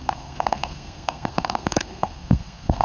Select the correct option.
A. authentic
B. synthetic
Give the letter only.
B